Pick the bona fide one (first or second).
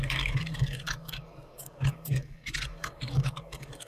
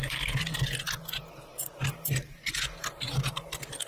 second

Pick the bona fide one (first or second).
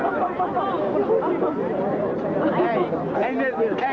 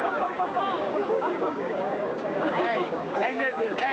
first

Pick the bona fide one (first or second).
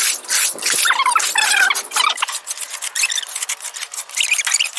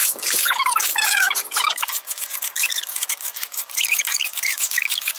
first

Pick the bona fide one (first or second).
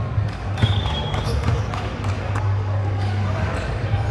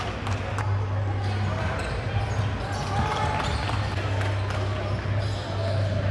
second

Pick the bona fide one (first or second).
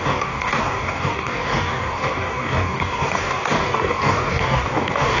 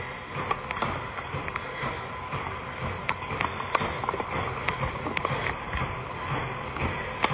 second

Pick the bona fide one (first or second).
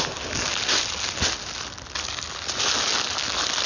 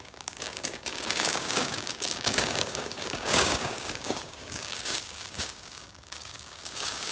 first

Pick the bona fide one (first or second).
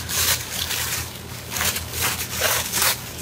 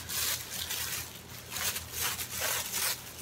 second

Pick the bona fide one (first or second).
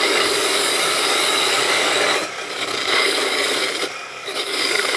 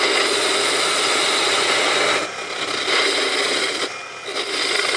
second